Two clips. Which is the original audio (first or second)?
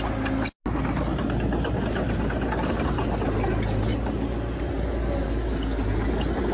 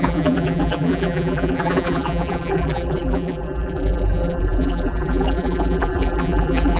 first